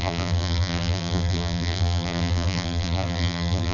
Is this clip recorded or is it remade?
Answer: remade